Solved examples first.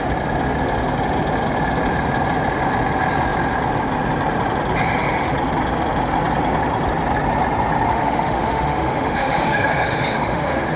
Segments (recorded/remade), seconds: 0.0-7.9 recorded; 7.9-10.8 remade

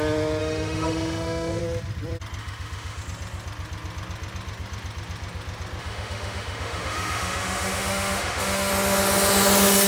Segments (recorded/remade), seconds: 0.0-0.4 recorded; 0.4-1.6 remade; 1.6-2.4 recorded; 2.4-3.0 remade; 3.0-5.8 recorded; 5.8-8.7 remade; 8.7-9.9 recorded

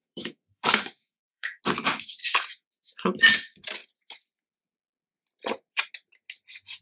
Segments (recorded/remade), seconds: 0.0-1.6 remade; 1.6-2.2 recorded; 2.2-2.9 remade; 2.9-6.8 recorded

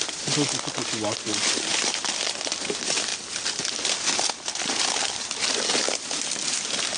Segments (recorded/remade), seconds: 0.0-7.0 recorded